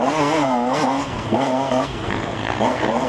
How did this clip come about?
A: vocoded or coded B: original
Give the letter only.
A